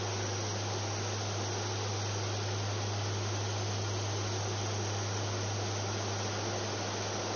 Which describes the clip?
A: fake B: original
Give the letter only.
B